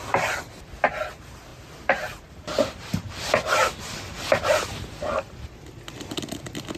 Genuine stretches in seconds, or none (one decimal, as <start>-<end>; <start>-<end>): 0.0-6.8